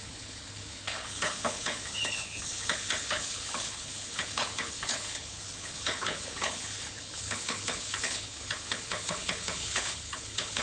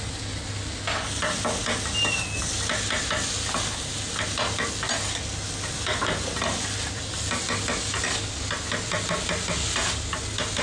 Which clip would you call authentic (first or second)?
second